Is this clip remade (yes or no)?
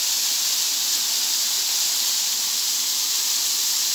no